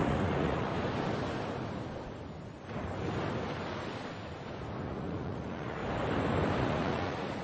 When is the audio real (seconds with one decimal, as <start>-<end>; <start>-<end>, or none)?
0.7-4.8; 5.8-6.6